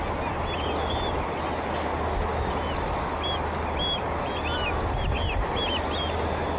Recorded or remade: recorded